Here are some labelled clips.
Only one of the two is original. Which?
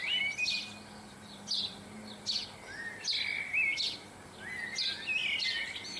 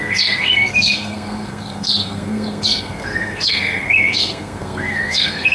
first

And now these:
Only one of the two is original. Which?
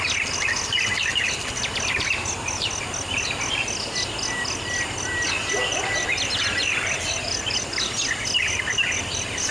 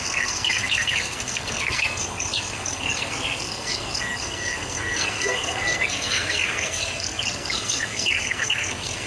first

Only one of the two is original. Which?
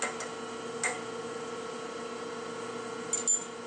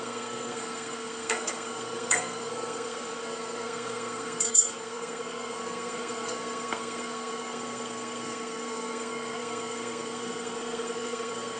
first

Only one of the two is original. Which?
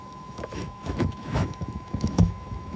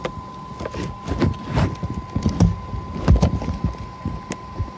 second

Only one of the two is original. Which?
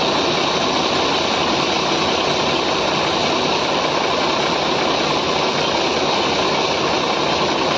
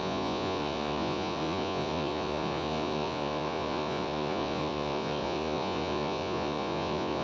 first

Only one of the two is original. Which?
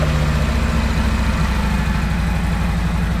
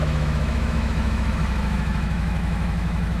first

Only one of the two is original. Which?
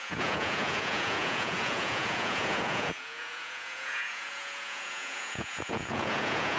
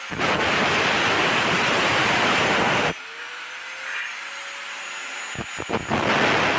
second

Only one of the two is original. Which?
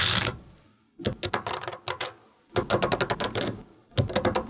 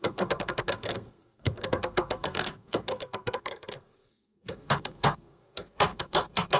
first